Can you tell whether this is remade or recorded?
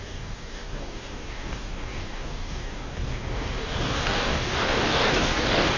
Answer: remade